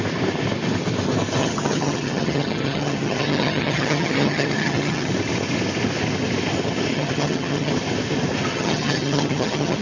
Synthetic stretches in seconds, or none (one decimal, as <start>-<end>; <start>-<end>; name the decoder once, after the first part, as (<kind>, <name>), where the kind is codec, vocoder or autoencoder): 1.4-5.1 (vocoder, HiFi-GAN); 6.9-7.7; 8.5-9.8